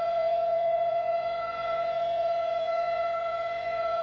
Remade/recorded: remade